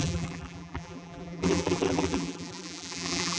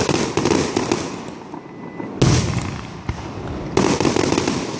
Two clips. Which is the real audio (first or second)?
second